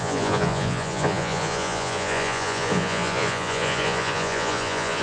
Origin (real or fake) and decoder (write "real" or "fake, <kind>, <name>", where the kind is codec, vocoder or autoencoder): fake, vocoder, Vocos